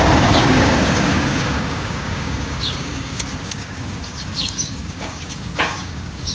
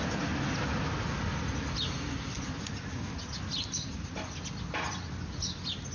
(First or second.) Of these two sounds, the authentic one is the second